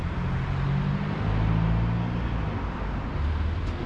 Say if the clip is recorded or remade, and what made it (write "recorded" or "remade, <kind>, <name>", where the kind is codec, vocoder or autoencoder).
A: recorded